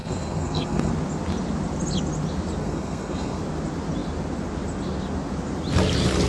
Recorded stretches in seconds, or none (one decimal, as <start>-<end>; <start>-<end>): 0.9-2.6; 3.4-6.3